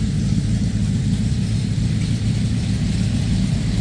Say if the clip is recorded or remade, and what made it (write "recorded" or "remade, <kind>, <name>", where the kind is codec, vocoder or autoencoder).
recorded